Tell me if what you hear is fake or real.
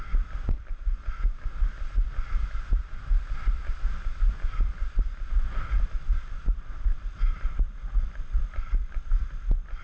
real